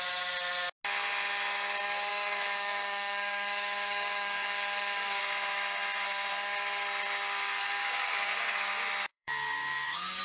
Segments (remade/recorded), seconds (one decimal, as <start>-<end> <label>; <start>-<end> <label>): 0.0-2.1 recorded; 2.1-5.2 remade; 5.2-7.6 recorded; 7.6-8.4 remade; 8.4-9.1 recorded; 9.1-10.2 remade